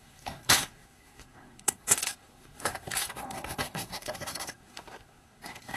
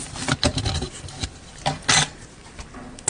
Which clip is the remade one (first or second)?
first